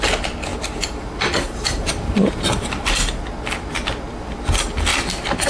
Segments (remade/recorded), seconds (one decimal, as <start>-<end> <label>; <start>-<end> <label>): 0.0-0.5 recorded; 0.5-2.8 remade; 2.8-4.9 recorded; 4.9-5.5 remade